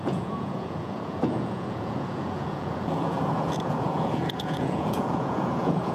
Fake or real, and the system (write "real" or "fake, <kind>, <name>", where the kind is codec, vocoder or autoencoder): fake, vocoder, Vocos